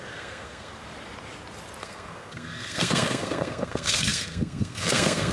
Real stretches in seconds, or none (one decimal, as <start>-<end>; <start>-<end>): 0.7-1.8